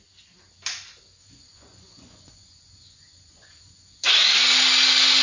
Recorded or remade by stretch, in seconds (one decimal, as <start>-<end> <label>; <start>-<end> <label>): 0.0-1.2 recorded; 1.2-4.1 remade; 4.1-5.2 recorded

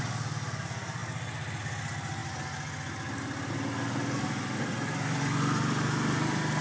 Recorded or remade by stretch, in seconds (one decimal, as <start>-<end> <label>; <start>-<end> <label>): 0.0-6.6 recorded